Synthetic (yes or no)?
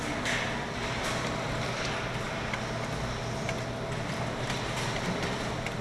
no